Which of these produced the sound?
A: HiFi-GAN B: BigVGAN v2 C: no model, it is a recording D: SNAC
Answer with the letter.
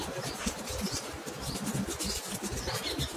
C